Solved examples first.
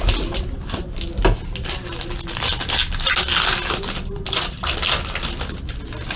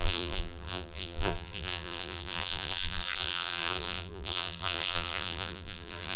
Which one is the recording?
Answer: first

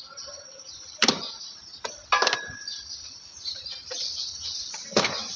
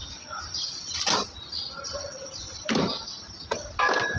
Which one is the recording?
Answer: second